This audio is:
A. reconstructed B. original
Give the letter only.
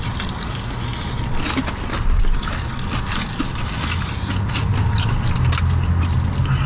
B